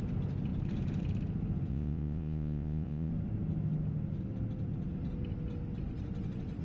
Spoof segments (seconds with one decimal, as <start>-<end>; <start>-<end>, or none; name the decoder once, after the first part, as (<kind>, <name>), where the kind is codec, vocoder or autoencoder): 1.7-3.1 (vocoder, Vocos)

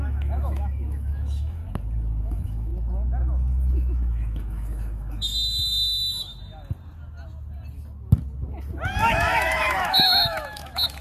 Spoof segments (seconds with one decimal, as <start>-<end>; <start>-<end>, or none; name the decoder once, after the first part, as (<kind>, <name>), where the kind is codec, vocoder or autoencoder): 0.0-1.6 (autoencoder, DAC-VAE); 2.2-2.7; 3.7-6.3; 9.0-11.0